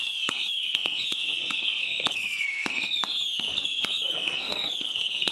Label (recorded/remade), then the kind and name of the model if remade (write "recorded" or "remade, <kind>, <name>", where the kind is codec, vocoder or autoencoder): remade, codec, SNAC